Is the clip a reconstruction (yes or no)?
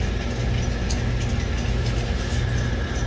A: no